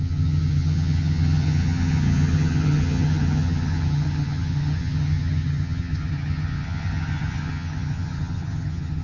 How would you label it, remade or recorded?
remade